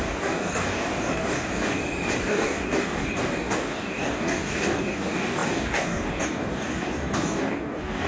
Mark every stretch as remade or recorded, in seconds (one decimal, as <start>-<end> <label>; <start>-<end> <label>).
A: 0.0-1.8 remade; 1.8-2.3 recorded; 2.3-8.1 remade